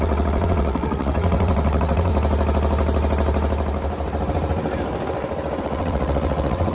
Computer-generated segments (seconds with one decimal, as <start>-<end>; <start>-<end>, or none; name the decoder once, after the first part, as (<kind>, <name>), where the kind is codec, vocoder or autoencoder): 0.0-2.1 (vocoder, WaveNeXt); 5.6-6.7